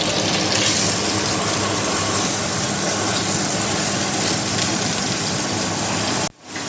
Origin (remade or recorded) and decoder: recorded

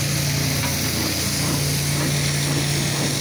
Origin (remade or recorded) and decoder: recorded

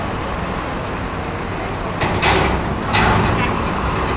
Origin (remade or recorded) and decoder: recorded